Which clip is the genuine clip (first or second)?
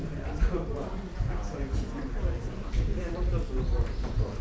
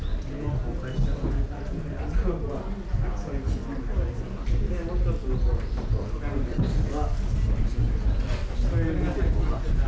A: second